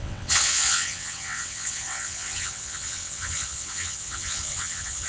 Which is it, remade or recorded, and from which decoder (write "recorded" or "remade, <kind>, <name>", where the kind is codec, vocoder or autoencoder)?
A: remade, vocoder, WaveNeXt